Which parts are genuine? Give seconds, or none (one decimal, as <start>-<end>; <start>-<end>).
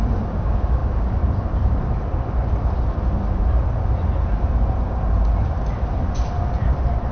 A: 0.0-7.1